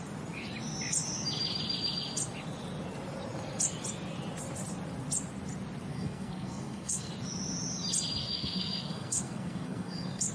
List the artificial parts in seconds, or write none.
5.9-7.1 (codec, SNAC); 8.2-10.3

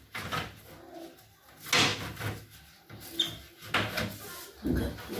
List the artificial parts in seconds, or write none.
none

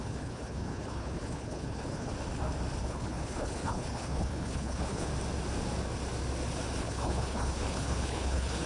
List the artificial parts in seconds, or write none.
0.0-2.1 (codec, HILCodec); 2.8-5.1; 6.8-8.7

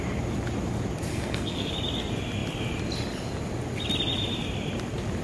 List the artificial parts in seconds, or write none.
1.1-1.7 (codec, SNAC)